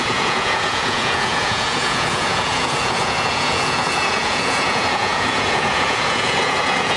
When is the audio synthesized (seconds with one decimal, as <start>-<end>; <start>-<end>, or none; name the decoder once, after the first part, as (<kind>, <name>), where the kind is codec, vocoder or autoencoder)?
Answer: 0.0-7.0 (vocoder, Vocos)